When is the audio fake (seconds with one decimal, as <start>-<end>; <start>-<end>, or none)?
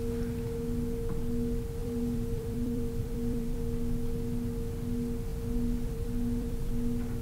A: 1.8-3.6; 5.3-6.7